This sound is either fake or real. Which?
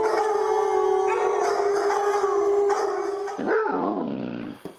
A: real